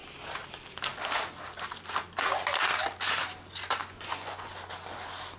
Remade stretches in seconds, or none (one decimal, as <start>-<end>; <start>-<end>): 3.8-4.5